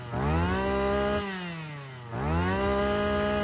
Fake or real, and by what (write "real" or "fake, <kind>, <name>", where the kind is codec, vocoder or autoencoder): real